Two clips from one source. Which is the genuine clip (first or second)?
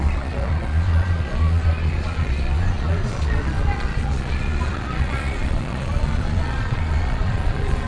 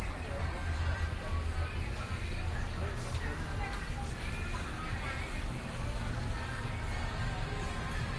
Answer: second